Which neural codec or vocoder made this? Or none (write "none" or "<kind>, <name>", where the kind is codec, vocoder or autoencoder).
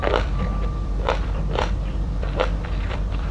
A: vocoder, BigVGAN v2